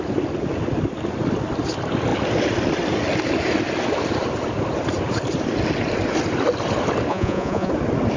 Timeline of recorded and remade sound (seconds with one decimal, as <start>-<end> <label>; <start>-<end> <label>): 0.0-7.1 recorded; 7.1-7.7 remade; 7.7-8.2 recorded